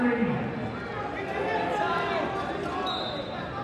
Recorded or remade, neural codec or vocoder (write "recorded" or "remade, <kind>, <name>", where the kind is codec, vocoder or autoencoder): recorded